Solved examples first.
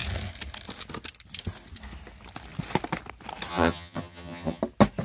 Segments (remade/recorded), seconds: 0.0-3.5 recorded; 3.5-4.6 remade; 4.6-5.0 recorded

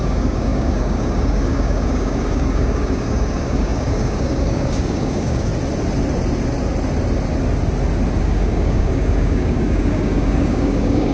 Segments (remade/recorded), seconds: 0.0-5.5 remade; 5.5-8.2 recorded; 8.2-11.1 remade

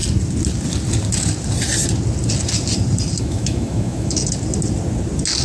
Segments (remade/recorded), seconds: 0.0-3.2 recorded; 3.2-4.2 remade; 4.2-5.4 recorded

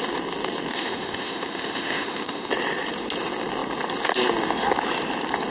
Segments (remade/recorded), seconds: 0.0-0.7 recorded; 0.7-2.5 remade; 2.5-5.5 recorded

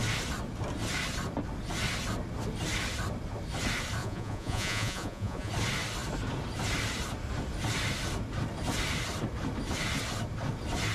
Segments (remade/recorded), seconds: 0.0-4.0 recorded; 4.0-5.5 remade; 5.5-10.9 recorded